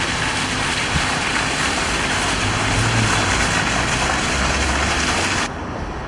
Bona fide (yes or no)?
yes